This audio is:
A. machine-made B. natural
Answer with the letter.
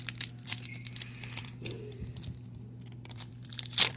A